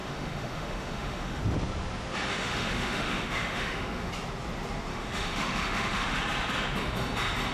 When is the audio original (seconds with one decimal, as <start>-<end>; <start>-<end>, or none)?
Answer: 1.4-2.3; 4.1-4.9; 6.2-7.5

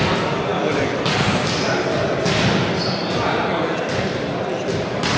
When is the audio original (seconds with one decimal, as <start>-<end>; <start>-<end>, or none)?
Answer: 0.0-5.2